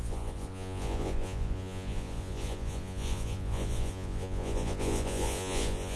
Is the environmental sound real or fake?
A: fake